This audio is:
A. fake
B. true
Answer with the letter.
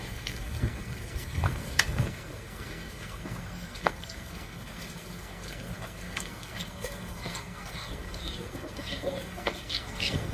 A